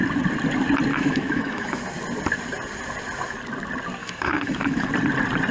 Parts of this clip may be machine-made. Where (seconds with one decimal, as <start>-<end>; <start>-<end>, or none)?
0.9-1.8; 4.0-4.9